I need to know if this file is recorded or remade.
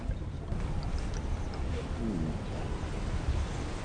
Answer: recorded